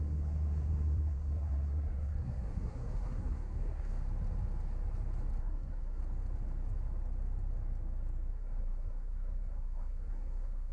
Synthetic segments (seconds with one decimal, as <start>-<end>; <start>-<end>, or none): 0.0-3.9; 5.4-6.0; 8.3-10.7